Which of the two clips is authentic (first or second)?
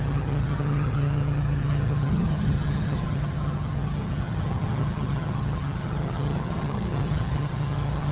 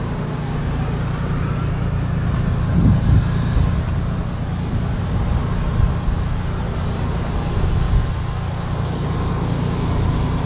second